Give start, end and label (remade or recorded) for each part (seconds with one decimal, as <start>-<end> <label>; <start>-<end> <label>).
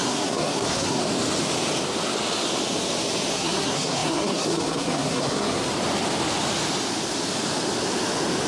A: 0.0-1.0 remade; 1.0-3.3 recorded; 3.3-5.7 remade; 5.7-8.5 recorded